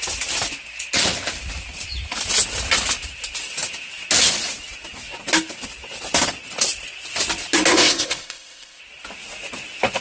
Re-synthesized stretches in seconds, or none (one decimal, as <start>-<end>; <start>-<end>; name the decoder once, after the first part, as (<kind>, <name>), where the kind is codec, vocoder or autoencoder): 7.7-8.8 (codec, ZipCodec)